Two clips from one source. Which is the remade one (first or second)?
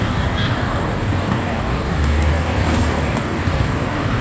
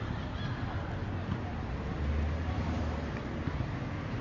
first